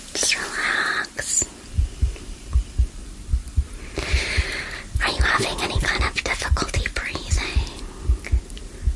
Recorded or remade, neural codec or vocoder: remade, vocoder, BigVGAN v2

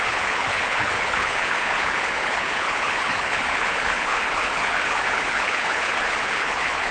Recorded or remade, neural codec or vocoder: remade, codec, HILCodec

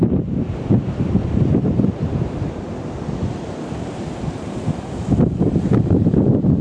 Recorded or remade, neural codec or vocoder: recorded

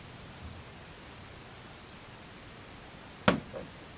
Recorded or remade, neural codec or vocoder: recorded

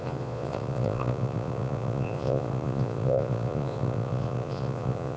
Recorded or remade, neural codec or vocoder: remade, vocoder, Vocos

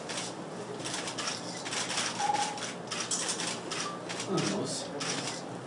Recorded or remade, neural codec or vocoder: recorded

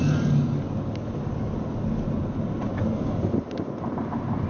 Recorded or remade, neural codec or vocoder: recorded